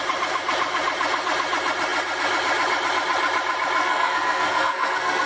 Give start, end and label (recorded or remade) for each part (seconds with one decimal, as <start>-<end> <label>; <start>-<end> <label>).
0.0-3.8 recorded; 3.8-5.3 remade